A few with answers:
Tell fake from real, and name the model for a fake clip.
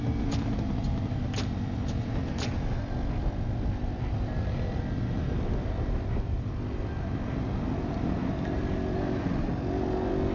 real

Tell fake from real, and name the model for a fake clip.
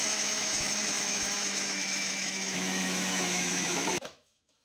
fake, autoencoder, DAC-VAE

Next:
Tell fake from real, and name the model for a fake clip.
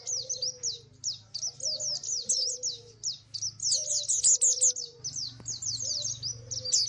real